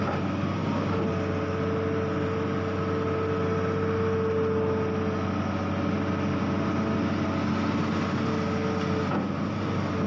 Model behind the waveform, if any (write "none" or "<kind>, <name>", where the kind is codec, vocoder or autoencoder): none